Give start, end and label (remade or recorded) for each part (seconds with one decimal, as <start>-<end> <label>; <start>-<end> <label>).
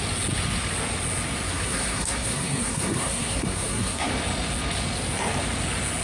0.0-1.5 recorded; 1.5-4.1 remade; 4.1-6.0 recorded